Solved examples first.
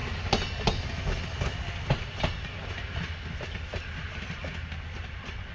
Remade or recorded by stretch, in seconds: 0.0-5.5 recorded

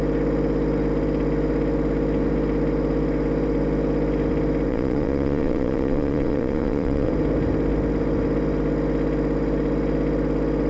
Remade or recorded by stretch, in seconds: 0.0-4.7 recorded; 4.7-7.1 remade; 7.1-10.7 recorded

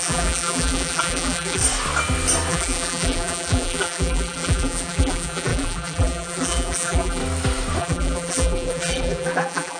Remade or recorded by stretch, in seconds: 0.0-1.6 remade; 1.6-2.5 recorded; 2.5-7.2 remade; 7.2-7.8 recorded; 7.8-9.8 remade